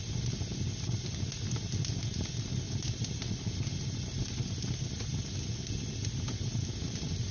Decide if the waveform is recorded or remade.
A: recorded